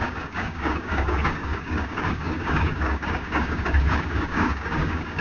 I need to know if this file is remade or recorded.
remade